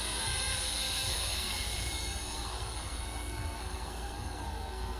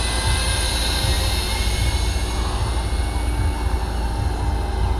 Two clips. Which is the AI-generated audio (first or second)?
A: first